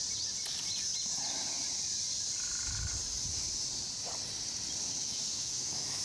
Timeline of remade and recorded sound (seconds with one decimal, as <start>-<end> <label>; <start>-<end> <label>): 0.0-5.0 recorded; 5.0-6.0 remade